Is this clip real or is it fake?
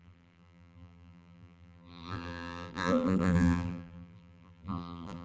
fake